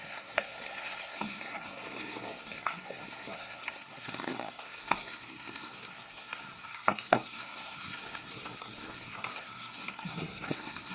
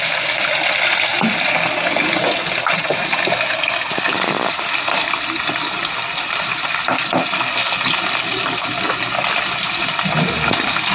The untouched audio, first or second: second